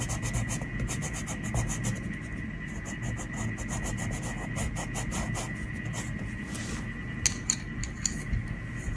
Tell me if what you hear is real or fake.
real